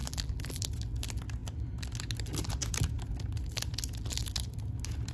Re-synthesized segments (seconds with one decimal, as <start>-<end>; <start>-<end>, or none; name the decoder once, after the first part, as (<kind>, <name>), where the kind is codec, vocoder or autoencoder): 0.0-0.7 (vocoder, BigVGAN v2)